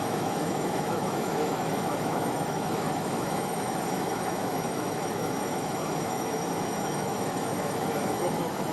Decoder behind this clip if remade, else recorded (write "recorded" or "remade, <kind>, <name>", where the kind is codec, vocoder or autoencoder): remade, autoencoder, DAC-VAE